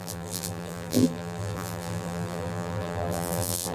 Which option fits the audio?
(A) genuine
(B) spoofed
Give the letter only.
B